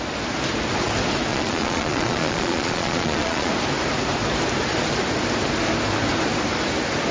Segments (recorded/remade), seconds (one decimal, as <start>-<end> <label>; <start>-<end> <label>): 0.0-1.3 recorded; 1.3-3.5 remade; 3.5-7.1 recorded